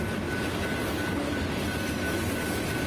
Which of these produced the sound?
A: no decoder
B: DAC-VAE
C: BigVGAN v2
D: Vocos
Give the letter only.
A